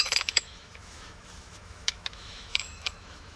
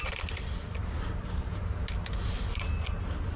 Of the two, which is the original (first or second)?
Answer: second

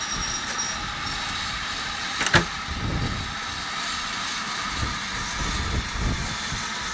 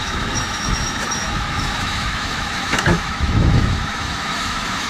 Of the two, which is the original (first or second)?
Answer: first